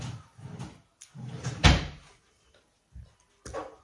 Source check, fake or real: real